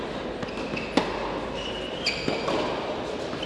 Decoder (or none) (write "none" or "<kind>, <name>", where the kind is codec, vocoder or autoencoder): none